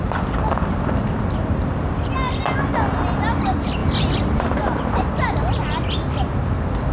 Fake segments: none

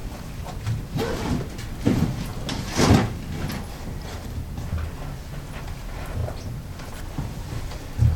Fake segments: none

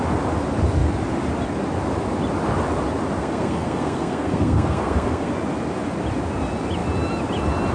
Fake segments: 3.2-5.3

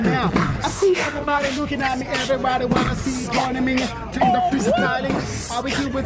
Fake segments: 0.7-1.7

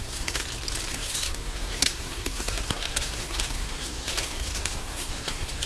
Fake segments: 0.0-0.4; 0.9-5.7